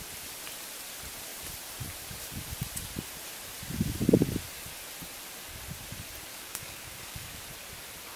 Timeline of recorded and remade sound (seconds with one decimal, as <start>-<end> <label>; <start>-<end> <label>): 0.0-6.3 recorded; 6.3-7.4 remade; 7.4-8.2 recorded